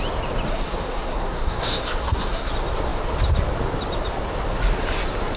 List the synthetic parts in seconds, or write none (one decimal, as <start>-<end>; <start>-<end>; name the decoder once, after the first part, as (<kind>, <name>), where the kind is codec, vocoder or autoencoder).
0.5-2.5 (codec, SNAC)